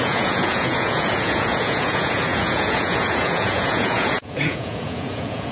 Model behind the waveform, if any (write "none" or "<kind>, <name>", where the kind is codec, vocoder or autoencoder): vocoder, Vocos